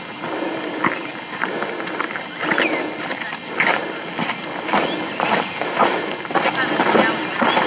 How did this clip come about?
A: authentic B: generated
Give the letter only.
A